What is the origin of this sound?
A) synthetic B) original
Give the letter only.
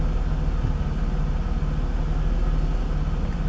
B